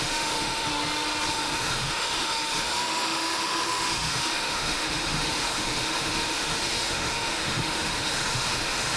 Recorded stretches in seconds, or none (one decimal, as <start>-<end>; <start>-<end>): 0.7-1.3